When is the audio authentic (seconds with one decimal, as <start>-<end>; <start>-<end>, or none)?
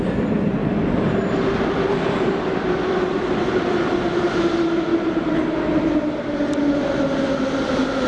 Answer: 0.0-0.6; 4.3-8.1